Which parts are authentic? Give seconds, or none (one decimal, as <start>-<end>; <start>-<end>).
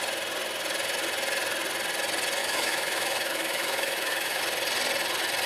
0.0-2.4; 4.4-5.5